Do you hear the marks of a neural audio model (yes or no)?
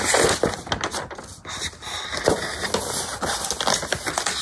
no